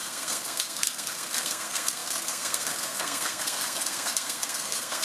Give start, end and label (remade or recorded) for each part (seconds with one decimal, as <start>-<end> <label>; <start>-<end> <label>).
0.0-5.0 remade